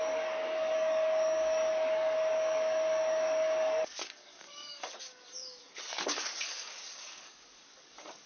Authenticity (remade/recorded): remade